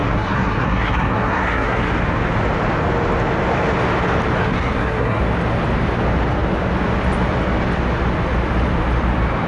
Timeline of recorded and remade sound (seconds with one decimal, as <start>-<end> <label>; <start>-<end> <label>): 0.0-1.9 remade; 1.9-4.4 recorded; 4.4-5.2 remade; 5.2-9.5 recorded